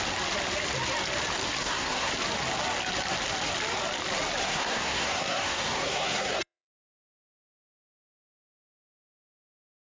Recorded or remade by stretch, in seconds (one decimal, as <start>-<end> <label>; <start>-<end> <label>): 0.0-1.6 recorded; 1.6-2.1 remade; 2.1-4.4 recorded; 4.4-8.7 remade; 8.7-9.8 recorded